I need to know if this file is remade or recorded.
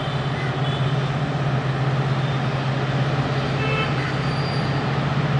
recorded